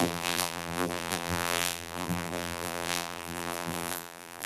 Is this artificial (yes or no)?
yes